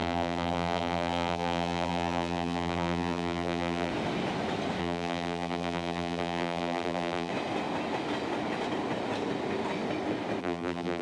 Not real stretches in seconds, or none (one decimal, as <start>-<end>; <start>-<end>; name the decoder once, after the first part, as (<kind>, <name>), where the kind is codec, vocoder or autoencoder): 0.0-3.9 (vocoder, BigVGAN v2); 4.8-7.3; 10.4-11.0